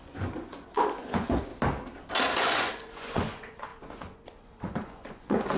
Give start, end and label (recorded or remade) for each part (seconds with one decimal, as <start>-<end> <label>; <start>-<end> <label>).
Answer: 0.0-1.5 remade; 1.5-2.3 recorded; 2.3-5.6 remade